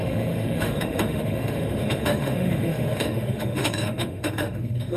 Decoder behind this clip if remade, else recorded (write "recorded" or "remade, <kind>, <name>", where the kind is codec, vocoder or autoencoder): remade, autoencoder, DAC-VAE